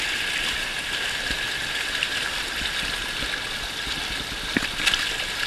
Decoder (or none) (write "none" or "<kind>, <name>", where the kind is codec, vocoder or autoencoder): vocoder, BigVGAN v2